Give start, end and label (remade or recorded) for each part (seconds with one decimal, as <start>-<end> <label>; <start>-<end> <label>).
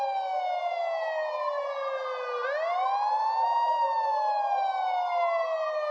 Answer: 0.0-5.9 recorded